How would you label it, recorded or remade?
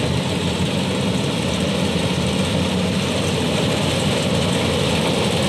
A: remade